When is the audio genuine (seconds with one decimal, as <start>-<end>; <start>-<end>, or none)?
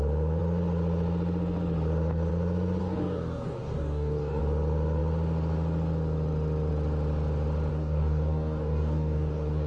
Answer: 0.0-2.8; 4.4-7.7